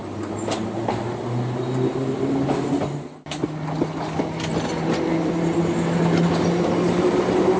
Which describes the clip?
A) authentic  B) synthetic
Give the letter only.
A